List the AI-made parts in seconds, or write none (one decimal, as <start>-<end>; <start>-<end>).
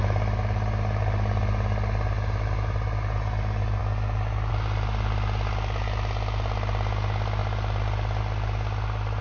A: 7.4-8.2